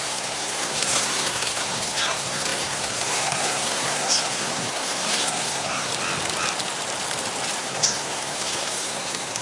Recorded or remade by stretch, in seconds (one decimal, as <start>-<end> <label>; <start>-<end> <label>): 0.0-5.9 remade; 5.9-7.6 recorded; 7.6-9.4 remade